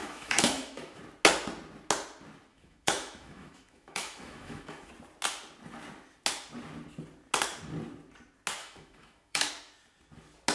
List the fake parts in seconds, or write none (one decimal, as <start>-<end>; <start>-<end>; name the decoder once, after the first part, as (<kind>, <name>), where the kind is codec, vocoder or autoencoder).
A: 0.0-1.0 (autoencoder, DAC-VAE); 2.5-4.9; 8.6-9.5